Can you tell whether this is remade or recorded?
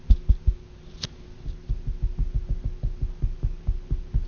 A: recorded